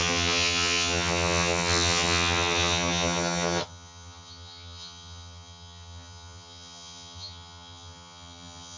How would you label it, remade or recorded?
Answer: remade